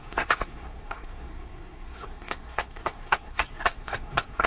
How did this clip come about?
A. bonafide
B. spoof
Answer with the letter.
B